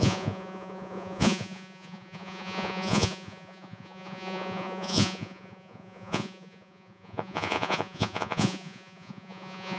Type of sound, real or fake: fake